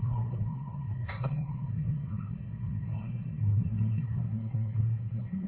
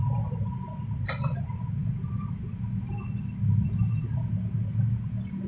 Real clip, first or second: second